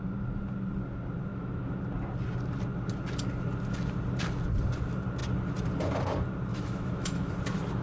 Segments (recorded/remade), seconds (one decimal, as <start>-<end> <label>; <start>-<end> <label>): 0.0-1.3 recorded; 1.3-1.8 remade; 1.8-6.5 recorded; 6.5-7.3 remade; 7.3-7.8 recorded